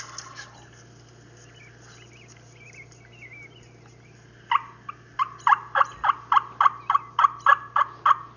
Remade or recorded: recorded